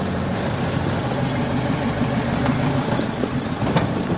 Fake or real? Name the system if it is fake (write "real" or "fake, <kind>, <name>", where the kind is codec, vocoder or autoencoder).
fake, vocoder, BigVGAN v2